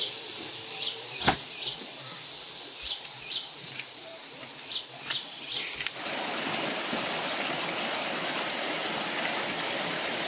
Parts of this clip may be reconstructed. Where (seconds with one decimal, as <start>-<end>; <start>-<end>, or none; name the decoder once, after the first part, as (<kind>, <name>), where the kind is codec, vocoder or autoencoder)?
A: 0.0-4.1 (vocoder, BigVGAN v2); 6.5-7.3; 8.2-8.8; 9.9-10.3